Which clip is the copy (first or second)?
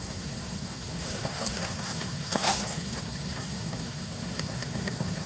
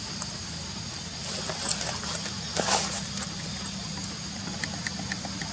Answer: first